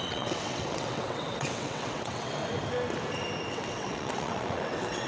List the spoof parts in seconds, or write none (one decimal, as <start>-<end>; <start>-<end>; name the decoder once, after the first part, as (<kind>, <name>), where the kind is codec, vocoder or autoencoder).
0.0-2.4 (vocoder, WaveNeXt); 3.5-5.1